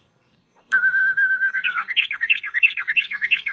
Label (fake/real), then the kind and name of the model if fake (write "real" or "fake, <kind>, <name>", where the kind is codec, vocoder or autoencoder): fake, codec, SNAC